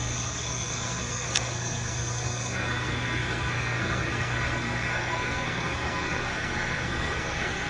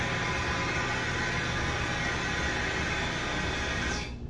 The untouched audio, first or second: second